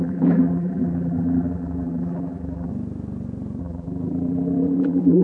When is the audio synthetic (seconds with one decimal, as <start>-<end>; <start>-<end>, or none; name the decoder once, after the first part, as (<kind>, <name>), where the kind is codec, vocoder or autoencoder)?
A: 0.0-2.7 (vocoder, BigVGAN v2); 3.6-5.2